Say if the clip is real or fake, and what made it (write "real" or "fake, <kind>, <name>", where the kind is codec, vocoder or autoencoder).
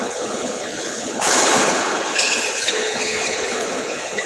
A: fake, codec, HILCodec